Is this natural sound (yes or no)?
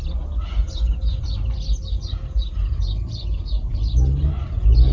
yes